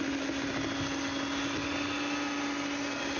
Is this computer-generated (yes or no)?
no